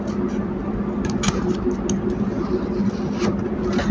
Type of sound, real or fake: real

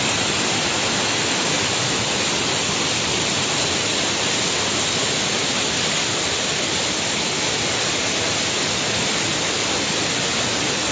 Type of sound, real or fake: real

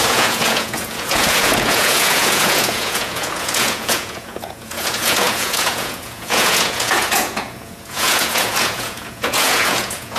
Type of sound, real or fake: fake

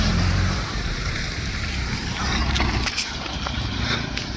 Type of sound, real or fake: fake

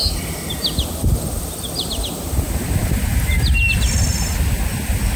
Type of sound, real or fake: real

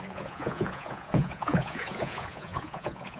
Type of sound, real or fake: fake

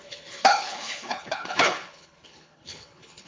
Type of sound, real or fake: fake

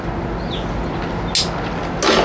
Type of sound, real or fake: real